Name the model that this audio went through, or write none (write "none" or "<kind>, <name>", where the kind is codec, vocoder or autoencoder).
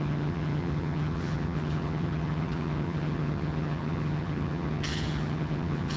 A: vocoder, HiFi-GAN